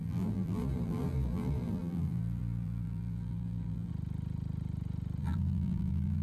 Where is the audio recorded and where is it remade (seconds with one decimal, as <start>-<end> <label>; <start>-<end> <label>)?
0.0-3.9 remade; 3.9-5.2 recorded; 5.2-6.2 remade